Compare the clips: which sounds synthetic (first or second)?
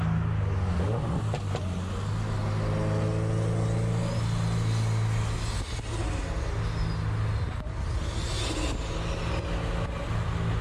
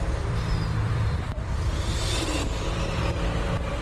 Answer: second